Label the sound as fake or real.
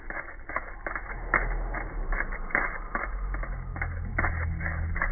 real